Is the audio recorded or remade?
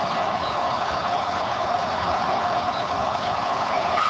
remade